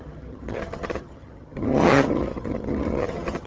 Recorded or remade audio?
remade